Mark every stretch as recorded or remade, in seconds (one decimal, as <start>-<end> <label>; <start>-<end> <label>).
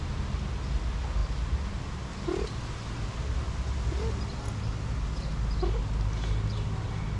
0.0-7.2 recorded